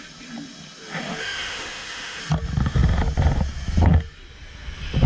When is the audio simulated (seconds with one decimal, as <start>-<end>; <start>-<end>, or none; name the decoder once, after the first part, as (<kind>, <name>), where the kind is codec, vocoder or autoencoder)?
1.2-2.2 (autoencoder, DAC-VAE)